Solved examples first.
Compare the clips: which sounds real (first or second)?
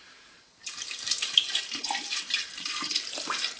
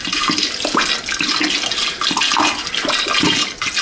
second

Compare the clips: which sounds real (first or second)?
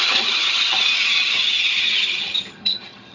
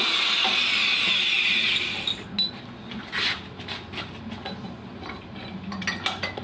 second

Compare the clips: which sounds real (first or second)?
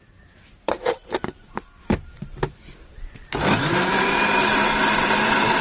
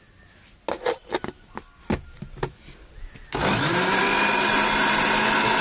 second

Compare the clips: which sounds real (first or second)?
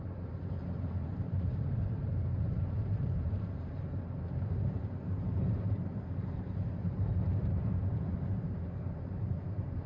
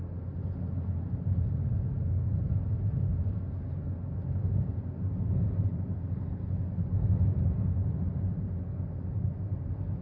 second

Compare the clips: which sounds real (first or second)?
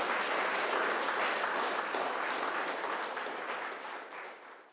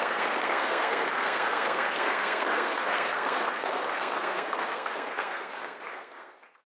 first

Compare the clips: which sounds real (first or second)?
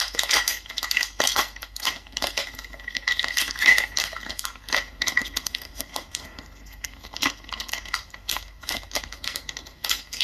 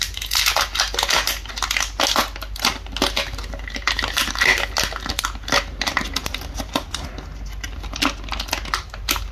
second